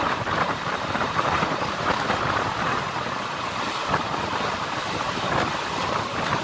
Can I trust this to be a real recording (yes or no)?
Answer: no